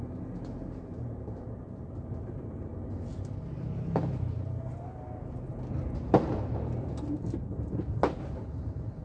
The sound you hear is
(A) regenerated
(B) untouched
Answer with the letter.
B